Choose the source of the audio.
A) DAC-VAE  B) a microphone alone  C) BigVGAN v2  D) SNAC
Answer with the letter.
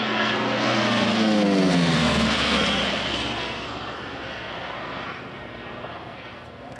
D